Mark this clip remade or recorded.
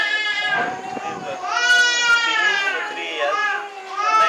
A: recorded